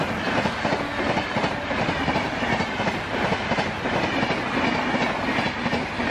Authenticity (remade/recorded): recorded